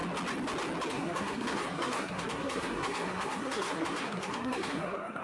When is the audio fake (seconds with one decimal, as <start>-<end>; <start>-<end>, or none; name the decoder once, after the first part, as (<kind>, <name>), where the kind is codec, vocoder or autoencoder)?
0.9-5.2 (codec, SNAC)

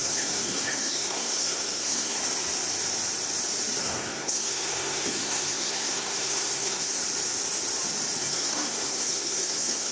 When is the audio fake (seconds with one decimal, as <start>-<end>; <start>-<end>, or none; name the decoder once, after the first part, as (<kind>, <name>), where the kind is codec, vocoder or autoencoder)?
0.0-2.2 (codec, SNAC); 3.8-7.0; 8.2-9.9